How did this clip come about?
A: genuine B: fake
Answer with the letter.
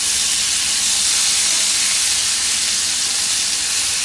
A